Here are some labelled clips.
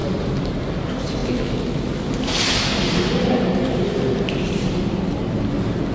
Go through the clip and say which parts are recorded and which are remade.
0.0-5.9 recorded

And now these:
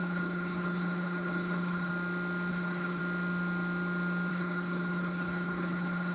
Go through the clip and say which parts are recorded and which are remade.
0.0-1.9 remade; 1.9-2.5 recorded; 2.5-3.0 remade; 3.0-4.3 recorded; 4.3-6.1 remade

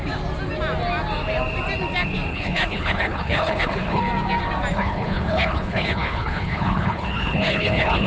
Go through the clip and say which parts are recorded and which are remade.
0.0-2.3 recorded; 2.3-4.0 remade; 4.0-4.7 recorded; 4.7-8.1 remade

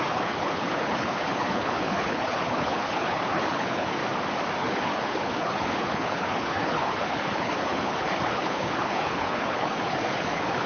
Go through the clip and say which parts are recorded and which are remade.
0.0-4.0 remade; 4.0-4.6 recorded; 4.6-10.7 remade

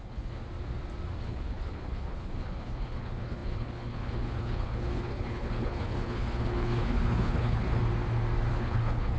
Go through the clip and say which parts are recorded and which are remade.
0.0-0.4 remade; 0.4-1.2 recorded; 1.2-7.8 remade; 7.8-8.5 recorded; 8.5-9.2 remade

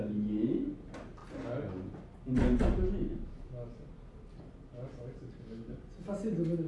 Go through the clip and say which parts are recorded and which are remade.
0.0-6.7 recorded

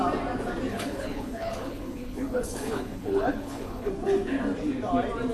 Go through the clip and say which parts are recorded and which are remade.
0.0-0.7 recorded; 0.7-3.9 remade; 3.9-5.3 recorded